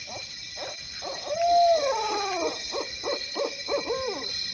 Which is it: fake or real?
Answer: real